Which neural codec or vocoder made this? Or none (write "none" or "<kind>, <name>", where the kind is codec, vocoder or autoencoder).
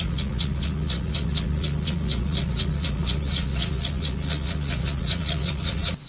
vocoder, Vocos